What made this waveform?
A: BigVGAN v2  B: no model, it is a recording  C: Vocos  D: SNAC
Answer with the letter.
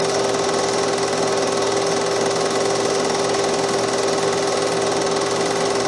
B